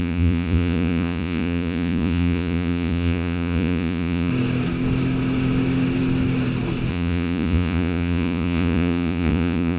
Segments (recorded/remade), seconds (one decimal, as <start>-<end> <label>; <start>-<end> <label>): 0.0-4.3 remade; 4.3-6.9 recorded; 6.9-9.8 remade